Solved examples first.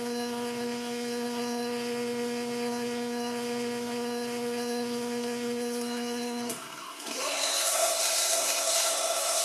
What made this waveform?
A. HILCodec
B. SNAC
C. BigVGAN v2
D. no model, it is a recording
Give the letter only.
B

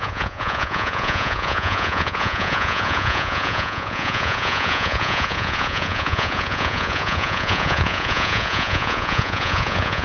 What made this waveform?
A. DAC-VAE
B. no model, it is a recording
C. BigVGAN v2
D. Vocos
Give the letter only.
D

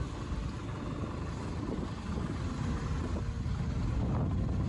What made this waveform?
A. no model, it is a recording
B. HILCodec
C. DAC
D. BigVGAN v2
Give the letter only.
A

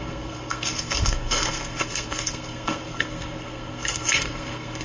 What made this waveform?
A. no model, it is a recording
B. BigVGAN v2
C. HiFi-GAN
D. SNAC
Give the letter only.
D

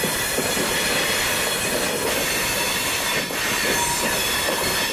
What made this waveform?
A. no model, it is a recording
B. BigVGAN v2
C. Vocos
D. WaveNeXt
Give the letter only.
A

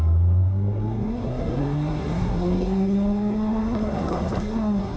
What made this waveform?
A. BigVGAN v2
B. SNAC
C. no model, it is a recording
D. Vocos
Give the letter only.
B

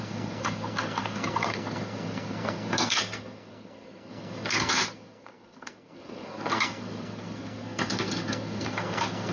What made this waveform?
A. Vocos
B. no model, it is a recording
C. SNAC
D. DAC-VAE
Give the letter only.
C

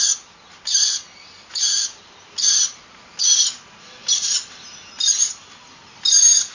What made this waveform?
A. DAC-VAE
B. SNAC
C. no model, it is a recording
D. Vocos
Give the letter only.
C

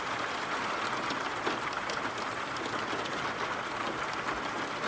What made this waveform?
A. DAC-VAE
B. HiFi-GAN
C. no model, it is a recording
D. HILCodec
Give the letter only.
C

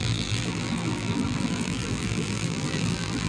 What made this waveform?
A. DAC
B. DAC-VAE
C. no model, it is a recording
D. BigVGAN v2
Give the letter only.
D